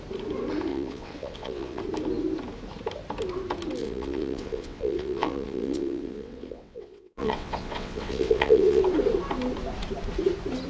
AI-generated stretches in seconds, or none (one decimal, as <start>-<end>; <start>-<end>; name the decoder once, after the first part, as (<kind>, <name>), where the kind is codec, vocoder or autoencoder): 0.7-1.8 (vocoder, WaveNeXt); 3.8-8.8

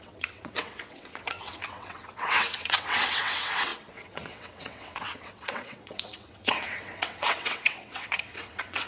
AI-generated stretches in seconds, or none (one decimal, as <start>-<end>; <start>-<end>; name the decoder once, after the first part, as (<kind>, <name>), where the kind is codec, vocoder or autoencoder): 0.0-8.9 (vocoder, WaveNeXt)

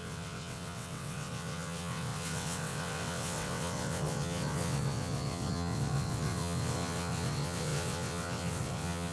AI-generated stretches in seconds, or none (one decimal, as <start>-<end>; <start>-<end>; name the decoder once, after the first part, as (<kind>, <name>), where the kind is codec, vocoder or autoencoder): 0.0-9.1 (vocoder, WaveNeXt)

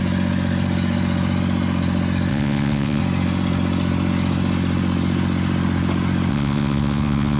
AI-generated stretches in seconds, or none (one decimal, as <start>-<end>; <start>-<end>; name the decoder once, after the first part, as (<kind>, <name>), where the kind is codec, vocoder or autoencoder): 2.3-3.0 (vocoder, WaveNeXt); 6.3-7.4

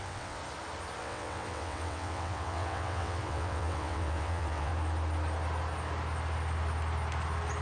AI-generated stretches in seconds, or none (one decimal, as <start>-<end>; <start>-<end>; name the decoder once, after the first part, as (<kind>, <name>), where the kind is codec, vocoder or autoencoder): 0.0-0.4 (vocoder, WaveNeXt); 1.0-4.7